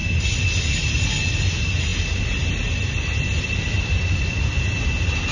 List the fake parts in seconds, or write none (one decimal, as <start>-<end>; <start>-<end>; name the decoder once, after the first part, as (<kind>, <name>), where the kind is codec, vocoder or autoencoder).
none